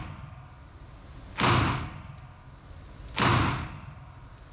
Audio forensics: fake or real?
real